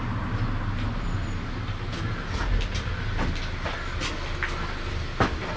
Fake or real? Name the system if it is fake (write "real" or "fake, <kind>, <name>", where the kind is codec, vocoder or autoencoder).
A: real